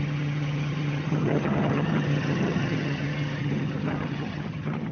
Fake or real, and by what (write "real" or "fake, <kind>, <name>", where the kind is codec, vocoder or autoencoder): fake, vocoder, HiFi-GAN